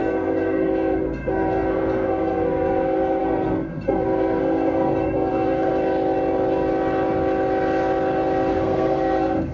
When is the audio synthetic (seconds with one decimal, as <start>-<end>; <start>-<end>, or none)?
0.0-5.7; 8.5-9.5